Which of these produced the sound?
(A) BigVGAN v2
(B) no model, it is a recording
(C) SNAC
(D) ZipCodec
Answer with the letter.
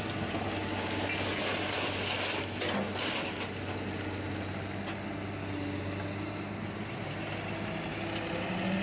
B